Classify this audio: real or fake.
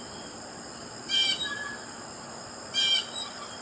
fake